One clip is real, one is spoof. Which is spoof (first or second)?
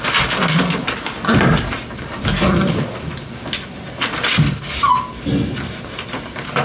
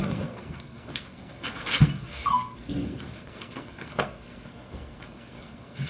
second